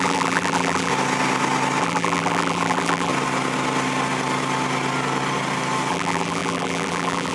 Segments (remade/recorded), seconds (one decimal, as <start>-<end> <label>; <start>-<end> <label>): 0.0-0.9 remade; 0.9-1.8 recorded; 1.8-3.1 remade; 3.1-5.9 recorded; 5.9-7.3 remade